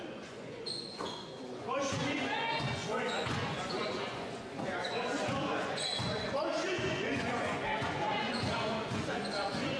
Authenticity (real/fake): fake